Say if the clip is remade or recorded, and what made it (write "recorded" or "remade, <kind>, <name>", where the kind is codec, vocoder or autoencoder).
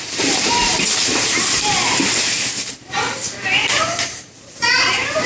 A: remade, vocoder, BigVGAN v2